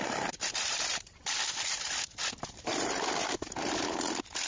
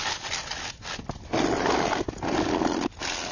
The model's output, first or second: first